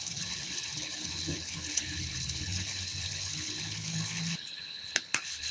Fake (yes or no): yes